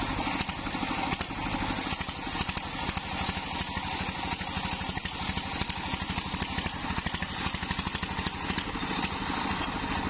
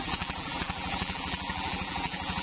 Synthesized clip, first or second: second